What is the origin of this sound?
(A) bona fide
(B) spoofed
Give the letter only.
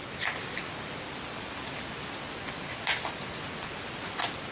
A